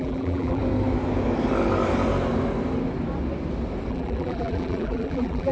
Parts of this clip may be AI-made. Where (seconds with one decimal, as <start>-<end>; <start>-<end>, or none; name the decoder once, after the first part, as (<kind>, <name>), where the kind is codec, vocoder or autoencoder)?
0.0-0.6 (vocoder, BigVGAN v2); 3.9-5.5